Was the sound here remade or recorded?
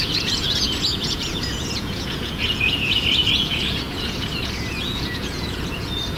remade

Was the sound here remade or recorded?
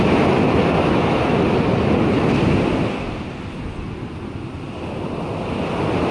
recorded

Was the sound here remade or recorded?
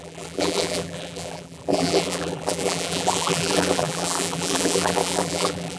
remade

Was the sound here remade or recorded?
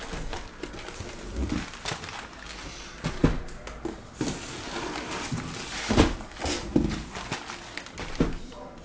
recorded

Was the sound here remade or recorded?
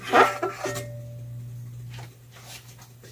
recorded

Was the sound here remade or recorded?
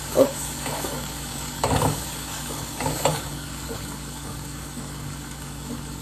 remade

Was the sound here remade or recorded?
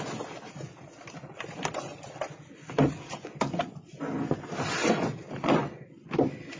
remade